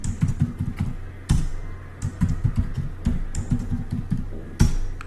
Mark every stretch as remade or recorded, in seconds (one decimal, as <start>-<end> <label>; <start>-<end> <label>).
0.0-5.1 recorded